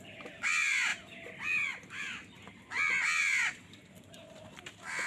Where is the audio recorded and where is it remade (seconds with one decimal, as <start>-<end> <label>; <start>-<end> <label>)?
0.0-5.1 recorded